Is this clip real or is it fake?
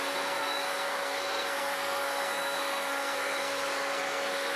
fake